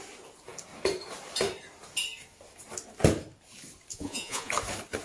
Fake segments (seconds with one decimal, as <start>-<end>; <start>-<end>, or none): 3.9-4.5